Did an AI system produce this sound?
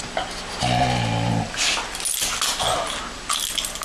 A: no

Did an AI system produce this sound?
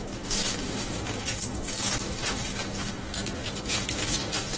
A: yes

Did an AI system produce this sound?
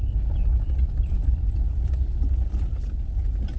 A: no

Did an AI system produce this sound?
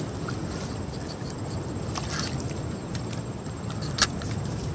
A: no